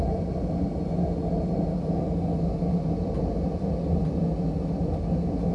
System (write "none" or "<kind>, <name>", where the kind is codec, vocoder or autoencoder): none